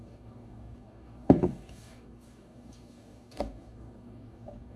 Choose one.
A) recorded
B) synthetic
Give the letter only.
B